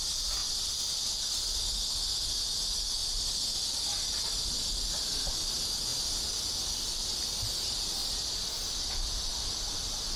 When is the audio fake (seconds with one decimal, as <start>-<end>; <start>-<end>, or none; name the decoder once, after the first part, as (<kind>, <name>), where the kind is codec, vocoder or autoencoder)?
none